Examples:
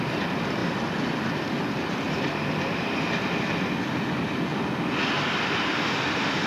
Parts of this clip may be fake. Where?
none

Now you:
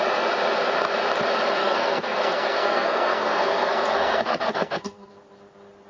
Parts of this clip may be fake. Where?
1.6-5.1

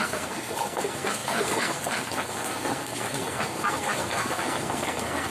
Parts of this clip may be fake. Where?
0.0-5.3

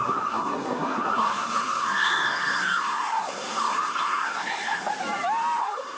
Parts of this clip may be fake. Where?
0.0-4.9; 5.6-6.0

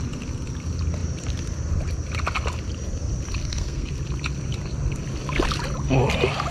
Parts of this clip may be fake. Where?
3.4-3.9

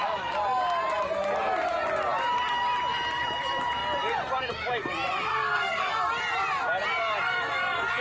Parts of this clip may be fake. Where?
5.3-6.0